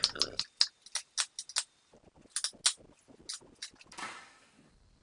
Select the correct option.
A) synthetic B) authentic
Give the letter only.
B